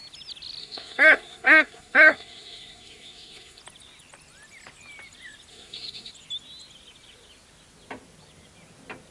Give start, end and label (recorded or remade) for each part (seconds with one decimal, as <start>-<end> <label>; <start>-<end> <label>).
0.0-0.6 recorded; 0.6-3.6 remade; 3.6-5.5 recorded; 5.5-6.1 remade; 6.1-9.1 recorded